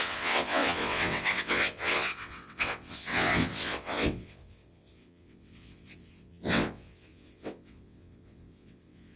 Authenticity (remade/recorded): remade